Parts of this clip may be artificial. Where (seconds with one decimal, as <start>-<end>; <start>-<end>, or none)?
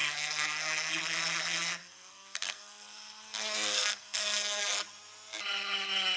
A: 0.0-0.9; 1.8-4.6